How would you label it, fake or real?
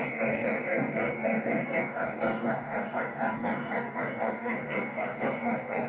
fake